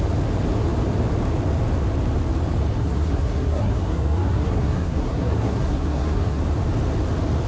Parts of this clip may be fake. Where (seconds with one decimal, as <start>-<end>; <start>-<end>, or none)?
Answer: 2.8-6.4